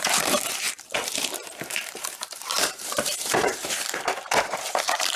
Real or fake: fake